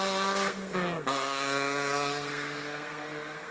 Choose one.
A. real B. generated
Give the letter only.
B